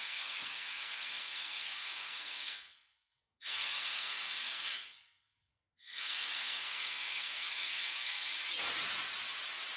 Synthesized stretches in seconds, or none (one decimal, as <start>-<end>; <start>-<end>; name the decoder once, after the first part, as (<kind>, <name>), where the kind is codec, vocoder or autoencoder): 0.0-8.3 (codec, SNAC)